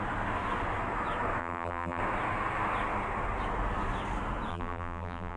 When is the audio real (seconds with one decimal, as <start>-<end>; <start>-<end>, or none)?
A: 0.0-1.4; 2.0-4.5